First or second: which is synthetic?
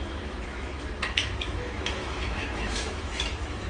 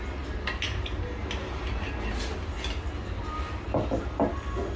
first